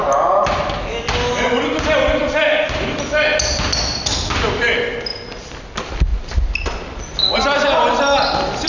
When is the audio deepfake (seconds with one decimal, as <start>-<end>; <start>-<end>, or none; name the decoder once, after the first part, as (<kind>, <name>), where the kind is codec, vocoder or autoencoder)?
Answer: none